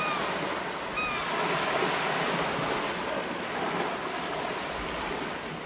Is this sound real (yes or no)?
yes